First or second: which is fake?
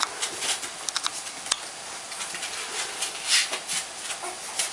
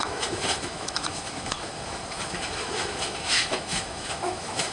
second